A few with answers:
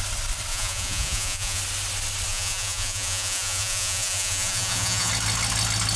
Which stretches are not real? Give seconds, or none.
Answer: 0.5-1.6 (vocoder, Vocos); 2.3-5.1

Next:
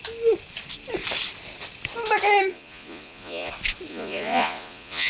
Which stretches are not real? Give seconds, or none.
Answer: 2.5-3.5 (vocoder, Vocos); 3.9-5.1

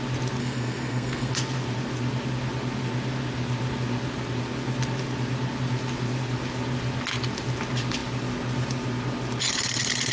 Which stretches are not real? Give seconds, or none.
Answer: 0.4-1.3 (codec, SNAC)

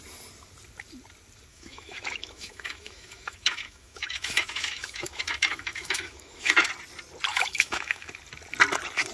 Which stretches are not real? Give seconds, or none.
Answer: 1.5-6.7 (autoencoder, DAC-VAE); 7.3-8.1

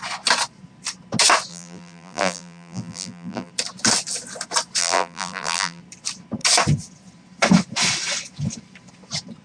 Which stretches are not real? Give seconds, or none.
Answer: 1.5-3.5 (vocoder, BigVGAN v2); 4.8-5.8

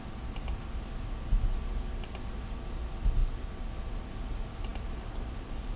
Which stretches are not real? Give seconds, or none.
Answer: none

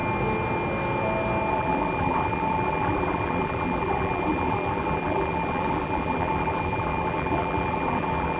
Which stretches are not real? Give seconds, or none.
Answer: 1.5-8.4 (vocoder, BigVGAN v2)

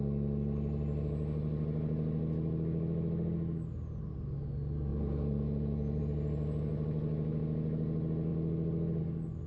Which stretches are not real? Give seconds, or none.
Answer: 4.9-6.0 (vocoder, Vocos)